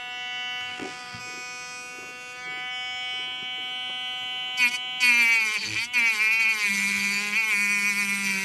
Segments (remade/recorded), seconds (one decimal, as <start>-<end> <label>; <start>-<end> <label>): 0.0-0.7 recorded; 0.7-1.2 remade; 1.2-8.4 recorded